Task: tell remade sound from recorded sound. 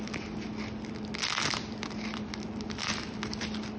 recorded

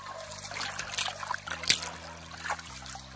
recorded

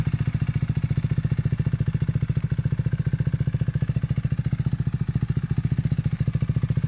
recorded